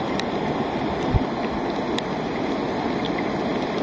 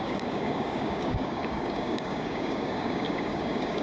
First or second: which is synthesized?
second